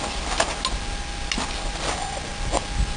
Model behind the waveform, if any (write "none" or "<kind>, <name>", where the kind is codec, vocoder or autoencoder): none